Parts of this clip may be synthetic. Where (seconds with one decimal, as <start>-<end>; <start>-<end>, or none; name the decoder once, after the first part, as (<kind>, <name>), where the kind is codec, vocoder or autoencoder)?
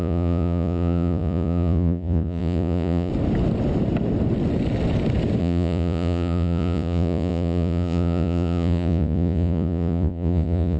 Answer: 0.0-3.1 (vocoder, Vocos); 5.4-10.8